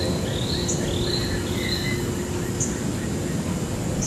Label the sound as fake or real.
real